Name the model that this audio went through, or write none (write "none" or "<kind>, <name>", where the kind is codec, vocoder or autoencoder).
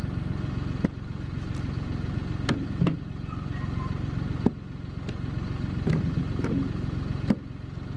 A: none